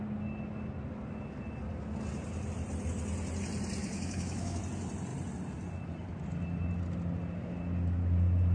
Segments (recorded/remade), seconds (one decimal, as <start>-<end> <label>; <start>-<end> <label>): 0.0-3.8 recorded; 3.8-4.6 remade; 4.6-8.5 recorded